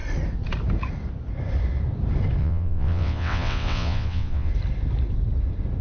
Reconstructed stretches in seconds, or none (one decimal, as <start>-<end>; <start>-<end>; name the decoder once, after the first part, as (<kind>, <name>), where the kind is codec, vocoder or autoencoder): 2.4-4.5 (vocoder, WaveNeXt)